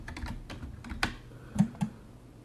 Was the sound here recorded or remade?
recorded